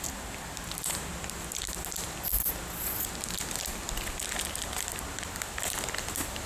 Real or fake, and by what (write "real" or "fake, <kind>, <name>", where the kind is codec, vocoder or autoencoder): real